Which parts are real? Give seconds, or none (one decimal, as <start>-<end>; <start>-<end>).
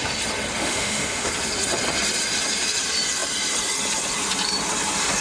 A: 0.0-0.6; 1.3-5.2